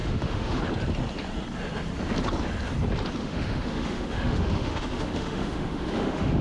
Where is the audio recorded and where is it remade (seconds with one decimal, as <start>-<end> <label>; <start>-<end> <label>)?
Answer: 0.0-0.6 remade; 0.6-3.2 recorded; 3.2-6.4 remade

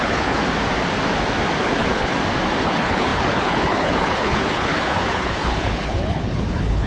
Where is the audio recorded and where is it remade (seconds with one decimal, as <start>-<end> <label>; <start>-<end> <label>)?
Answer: 0.0-0.4 remade; 0.4-1.6 recorded; 1.6-2.1 remade; 2.1-2.6 recorded; 2.6-6.9 remade

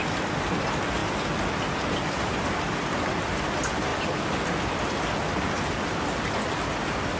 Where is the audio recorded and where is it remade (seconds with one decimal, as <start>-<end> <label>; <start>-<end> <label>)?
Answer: 0.0-7.2 recorded

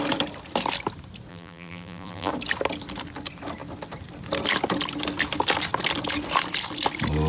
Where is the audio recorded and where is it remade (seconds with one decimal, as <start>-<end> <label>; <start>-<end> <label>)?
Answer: 0.0-1.3 recorded; 1.3-2.3 remade; 2.3-7.3 recorded

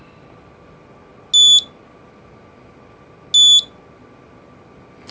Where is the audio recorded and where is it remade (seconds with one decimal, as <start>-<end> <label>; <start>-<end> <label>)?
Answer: 0.0-5.1 recorded

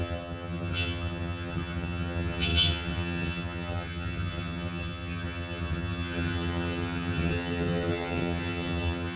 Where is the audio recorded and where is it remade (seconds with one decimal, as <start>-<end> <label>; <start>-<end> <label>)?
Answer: 0.0-9.2 remade